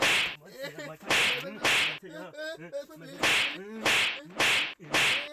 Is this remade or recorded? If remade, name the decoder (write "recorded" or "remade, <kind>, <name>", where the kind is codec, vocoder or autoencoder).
recorded